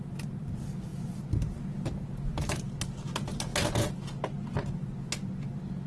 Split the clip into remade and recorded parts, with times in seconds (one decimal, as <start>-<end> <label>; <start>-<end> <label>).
0.0-5.9 recorded